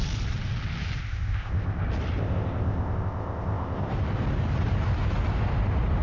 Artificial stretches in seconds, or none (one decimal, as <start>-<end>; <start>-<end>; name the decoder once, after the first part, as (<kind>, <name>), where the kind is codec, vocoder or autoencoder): 1.0-1.8 (codec, ZipCodec); 2.2-3.9

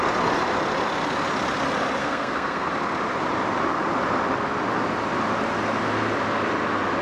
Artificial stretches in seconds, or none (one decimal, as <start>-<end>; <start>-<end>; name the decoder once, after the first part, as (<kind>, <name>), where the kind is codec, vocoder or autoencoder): 2.0-2.7 (codec, SNAC)

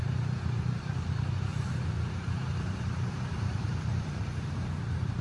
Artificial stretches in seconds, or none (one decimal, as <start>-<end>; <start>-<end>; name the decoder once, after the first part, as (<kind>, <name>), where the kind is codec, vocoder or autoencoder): 0.0-5.2 (vocoder, BigVGAN v2)

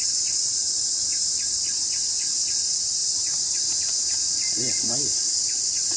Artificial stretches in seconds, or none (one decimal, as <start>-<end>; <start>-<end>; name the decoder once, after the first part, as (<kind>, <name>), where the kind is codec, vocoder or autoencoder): 0.0-0.5 (vocoder, Vocos); 1.5-3.0; 5.6-6.0